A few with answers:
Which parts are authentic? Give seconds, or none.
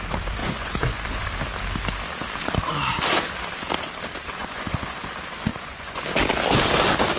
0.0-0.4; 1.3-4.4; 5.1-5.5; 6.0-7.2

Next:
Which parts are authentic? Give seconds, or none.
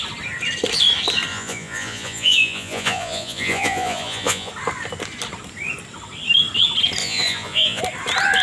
0.0-1.3; 4.5-7.0; 7.8-8.4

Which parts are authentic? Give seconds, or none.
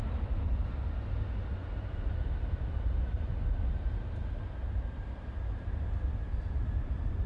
0.0-7.3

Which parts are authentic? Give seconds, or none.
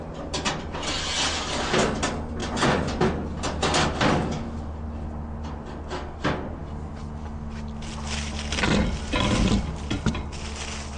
0.0-2.4; 3.0-11.0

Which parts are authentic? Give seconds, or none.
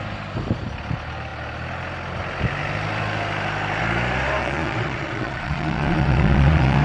0.0-4.4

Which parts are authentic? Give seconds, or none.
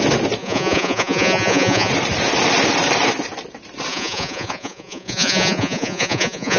0.0-0.4; 1.9-3.9